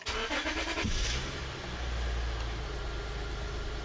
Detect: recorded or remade recorded